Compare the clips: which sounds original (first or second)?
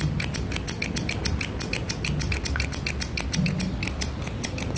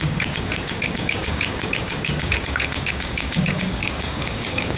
first